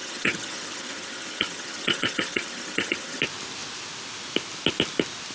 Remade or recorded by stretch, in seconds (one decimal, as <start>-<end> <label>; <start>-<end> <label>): 0.0-3.2 remade; 3.2-5.3 recorded